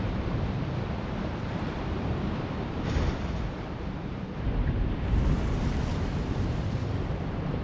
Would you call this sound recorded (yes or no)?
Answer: no